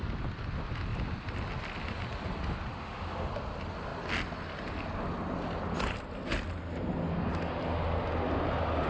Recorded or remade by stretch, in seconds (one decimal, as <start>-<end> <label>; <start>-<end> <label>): 0.0-2.7 recorded; 2.7-3.3 remade; 3.3-8.9 recorded